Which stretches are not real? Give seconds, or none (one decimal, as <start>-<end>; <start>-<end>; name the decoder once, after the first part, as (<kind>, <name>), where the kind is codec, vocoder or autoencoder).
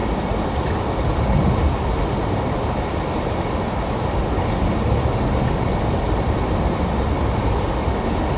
none